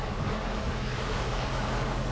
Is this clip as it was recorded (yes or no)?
no